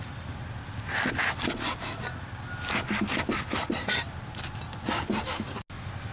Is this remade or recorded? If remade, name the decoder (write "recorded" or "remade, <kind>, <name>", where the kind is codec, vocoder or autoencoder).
recorded